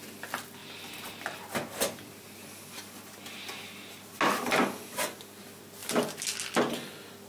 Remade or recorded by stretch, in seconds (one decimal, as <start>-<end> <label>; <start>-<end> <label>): 0.0-0.6 remade; 0.6-4.4 recorded; 4.4-5.8 remade; 5.8-6.7 recorded; 6.7-7.3 remade